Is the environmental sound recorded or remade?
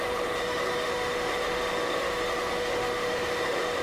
remade